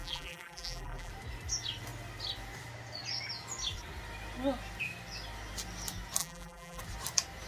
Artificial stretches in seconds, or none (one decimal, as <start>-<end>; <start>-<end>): 0.0-1.1; 6.2-6.8